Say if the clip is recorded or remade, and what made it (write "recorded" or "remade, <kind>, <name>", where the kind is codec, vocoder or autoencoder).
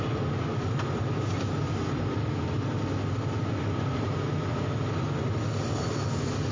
recorded